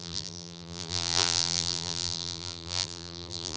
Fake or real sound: fake